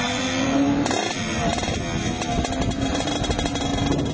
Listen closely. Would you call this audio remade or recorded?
recorded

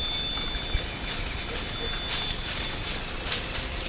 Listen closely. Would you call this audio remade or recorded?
recorded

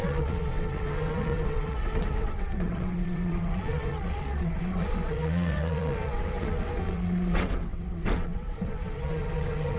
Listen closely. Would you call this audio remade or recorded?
remade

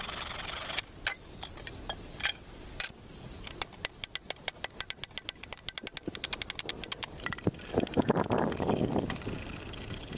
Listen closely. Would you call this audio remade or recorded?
recorded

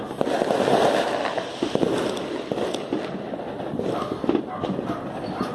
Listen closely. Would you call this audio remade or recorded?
recorded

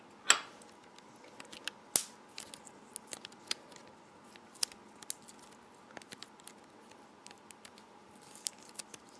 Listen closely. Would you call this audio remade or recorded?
recorded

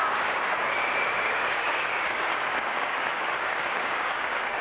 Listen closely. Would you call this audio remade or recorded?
remade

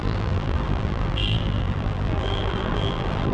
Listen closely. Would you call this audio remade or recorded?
remade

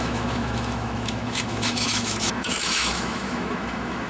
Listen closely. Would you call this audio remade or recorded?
remade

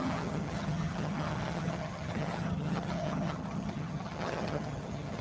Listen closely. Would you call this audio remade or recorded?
remade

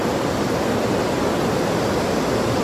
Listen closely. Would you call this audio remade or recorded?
recorded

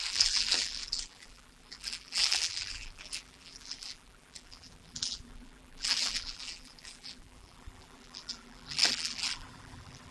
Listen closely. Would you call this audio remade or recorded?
remade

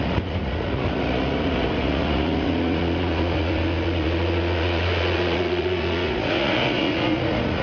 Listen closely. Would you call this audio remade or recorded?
remade